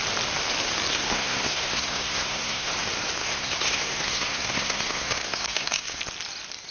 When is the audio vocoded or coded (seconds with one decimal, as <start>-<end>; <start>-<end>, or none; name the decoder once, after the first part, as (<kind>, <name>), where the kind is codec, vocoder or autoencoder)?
0.9-2.7 (codec, SNAC); 3.2-6.0